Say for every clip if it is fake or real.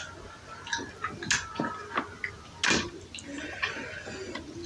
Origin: real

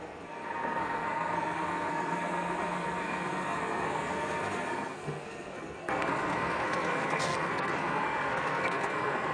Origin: fake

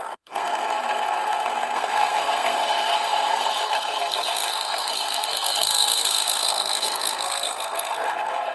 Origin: fake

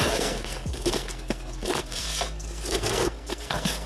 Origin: fake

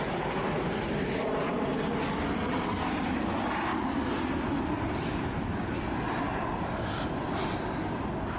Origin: real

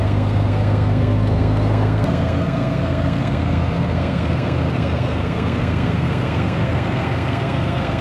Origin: fake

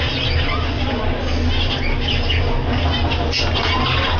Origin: real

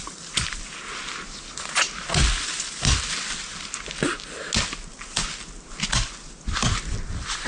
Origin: real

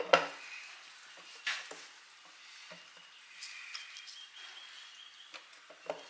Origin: real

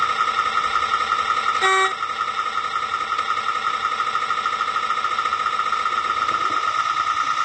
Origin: real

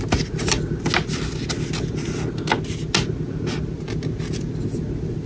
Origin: real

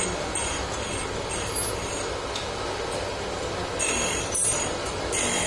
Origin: real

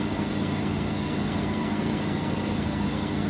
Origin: fake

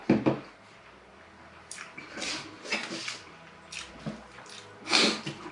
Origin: real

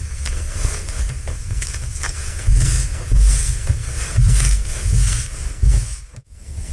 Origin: fake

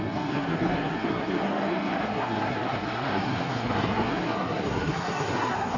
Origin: fake